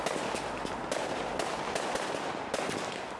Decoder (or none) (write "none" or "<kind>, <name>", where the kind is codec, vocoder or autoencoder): none